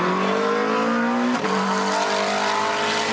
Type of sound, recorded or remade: recorded